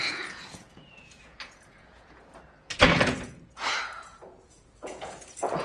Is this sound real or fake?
fake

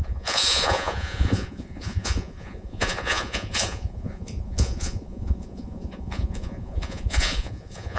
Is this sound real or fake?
fake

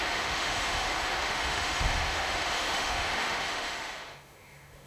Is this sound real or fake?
fake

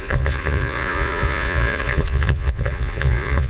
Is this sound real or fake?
fake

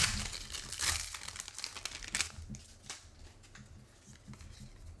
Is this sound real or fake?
real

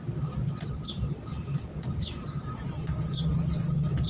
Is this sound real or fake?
real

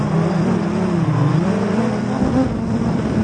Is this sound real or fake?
fake